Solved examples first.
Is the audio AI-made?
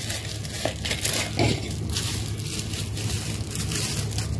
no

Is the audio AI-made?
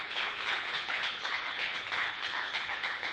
yes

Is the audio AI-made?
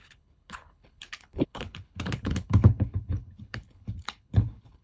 yes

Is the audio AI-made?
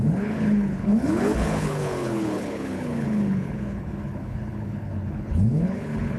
yes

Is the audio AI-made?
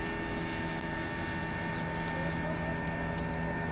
no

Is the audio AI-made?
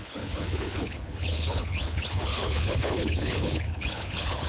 yes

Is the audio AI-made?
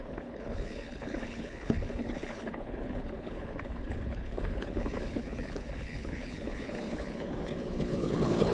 yes